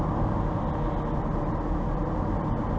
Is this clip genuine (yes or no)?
yes